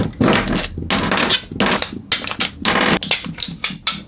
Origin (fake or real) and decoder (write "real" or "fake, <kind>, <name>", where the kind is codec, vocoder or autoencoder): real